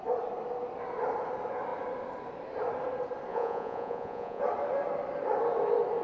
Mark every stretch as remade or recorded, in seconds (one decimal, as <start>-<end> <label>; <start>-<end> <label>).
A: 0.0-3.3 recorded; 3.3-4.4 remade; 4.4-6.0 recorded